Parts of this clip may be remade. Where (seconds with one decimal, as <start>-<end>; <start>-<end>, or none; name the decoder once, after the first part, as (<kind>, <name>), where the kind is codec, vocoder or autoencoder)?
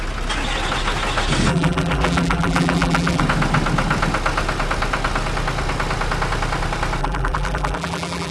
1.5-3.2 (vocoder, BigVGAN v2); 7.0-8.3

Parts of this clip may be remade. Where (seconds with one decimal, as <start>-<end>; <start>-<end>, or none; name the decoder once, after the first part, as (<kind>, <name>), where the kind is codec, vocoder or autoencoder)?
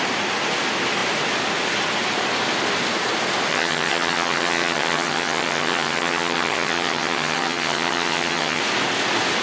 3.5-8.6 (vocoder, HiFi-GAN)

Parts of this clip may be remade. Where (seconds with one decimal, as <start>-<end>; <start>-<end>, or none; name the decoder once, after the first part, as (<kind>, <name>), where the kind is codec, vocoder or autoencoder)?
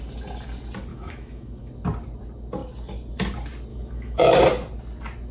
0.9-1.7 (autoencoder, DAC-VAE); 3.7-4.2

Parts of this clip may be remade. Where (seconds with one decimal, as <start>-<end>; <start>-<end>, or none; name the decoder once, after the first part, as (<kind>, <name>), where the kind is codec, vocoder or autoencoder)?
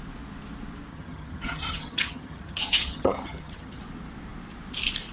0.9-3.8 (vocoder, HiFi-GAN)